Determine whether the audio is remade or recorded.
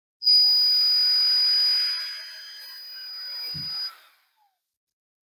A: recorded